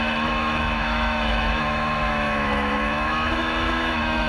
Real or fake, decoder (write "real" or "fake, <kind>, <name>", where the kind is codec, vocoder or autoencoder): fake, autoencoder, DAC-VAE